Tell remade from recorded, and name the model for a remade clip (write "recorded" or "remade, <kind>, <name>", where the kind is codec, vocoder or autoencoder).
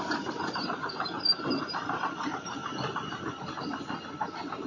recorded